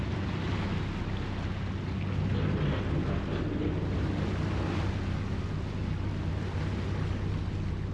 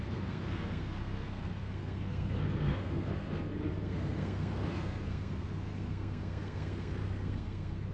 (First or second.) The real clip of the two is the first